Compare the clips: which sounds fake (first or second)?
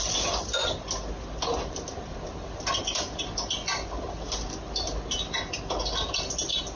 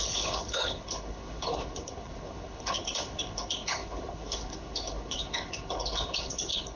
second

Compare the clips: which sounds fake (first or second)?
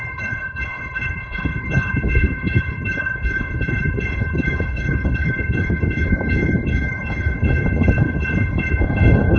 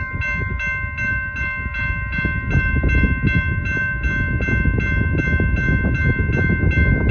first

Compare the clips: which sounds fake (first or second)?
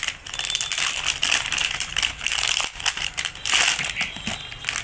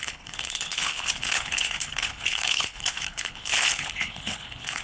second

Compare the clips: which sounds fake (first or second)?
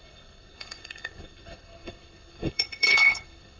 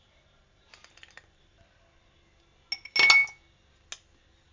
first